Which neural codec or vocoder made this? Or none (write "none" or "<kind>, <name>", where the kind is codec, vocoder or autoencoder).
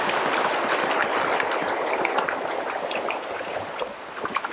none